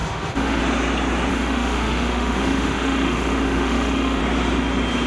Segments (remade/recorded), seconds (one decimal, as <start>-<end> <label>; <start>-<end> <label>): 0.0-0.6 remade; 0.6-1.3 recorded; 1.3-4.2 remade; 4.2-5.1 recorded